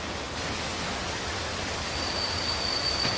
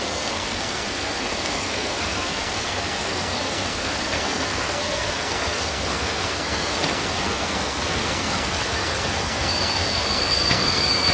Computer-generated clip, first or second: second